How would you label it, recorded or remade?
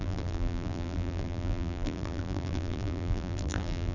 remade